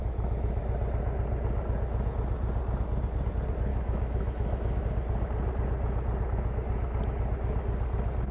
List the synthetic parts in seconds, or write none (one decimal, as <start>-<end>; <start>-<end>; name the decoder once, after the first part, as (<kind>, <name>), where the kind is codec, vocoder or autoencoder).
0.0-0.6 (autoencoder, DAC-VAE); 3.7-4.8